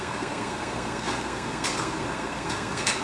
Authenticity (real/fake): fake